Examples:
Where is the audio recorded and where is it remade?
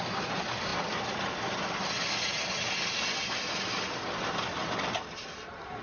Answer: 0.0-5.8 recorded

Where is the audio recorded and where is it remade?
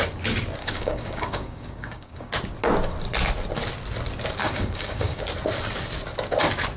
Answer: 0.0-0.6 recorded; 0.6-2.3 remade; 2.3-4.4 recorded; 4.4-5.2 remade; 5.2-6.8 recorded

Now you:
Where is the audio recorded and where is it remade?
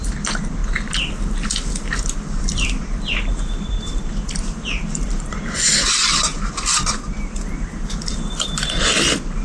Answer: 0.0-0.6 remade; 0.6-2.4 recorded; 2.4-9.4 remade